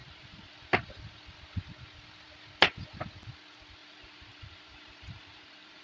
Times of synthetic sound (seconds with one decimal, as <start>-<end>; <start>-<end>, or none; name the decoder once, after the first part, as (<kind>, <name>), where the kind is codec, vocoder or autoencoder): 0.0-0.5 (vocoder, BigVGAN v2); 3.8-5.8